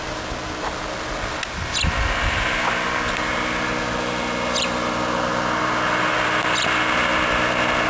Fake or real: real